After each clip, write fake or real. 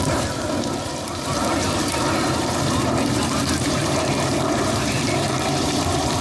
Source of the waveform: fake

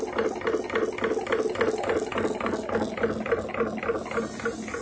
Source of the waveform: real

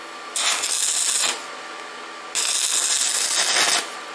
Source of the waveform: real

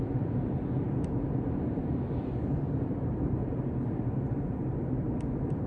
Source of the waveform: fake